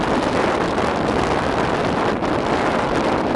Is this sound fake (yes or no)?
no